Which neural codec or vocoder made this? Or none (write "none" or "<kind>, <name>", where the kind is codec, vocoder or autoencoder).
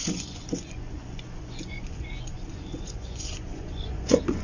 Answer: vocoder, Vocos